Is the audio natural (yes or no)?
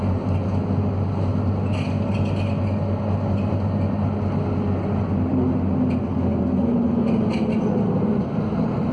yes